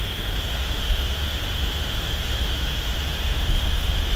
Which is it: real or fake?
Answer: fake